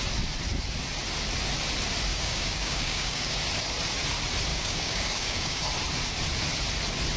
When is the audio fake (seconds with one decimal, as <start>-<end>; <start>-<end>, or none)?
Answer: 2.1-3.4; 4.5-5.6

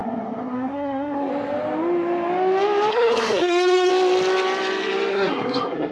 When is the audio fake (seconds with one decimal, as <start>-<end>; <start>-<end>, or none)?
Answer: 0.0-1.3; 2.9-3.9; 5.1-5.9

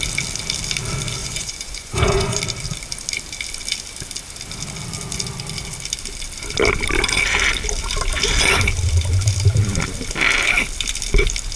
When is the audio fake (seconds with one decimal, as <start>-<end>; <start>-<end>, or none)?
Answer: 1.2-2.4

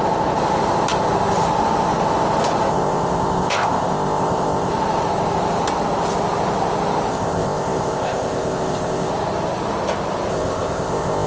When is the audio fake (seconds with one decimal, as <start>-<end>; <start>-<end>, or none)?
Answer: 2.7-4.7; 7.1-9.1; 10.3-11.3

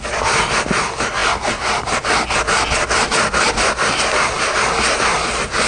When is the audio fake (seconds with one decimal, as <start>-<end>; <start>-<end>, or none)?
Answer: none